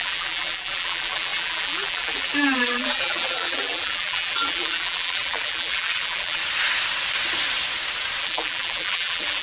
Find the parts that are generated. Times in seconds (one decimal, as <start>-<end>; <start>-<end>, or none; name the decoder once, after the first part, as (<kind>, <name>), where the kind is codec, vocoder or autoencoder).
0.0-6.4 (vocoder, BigVGAN v2); 8.2-9.4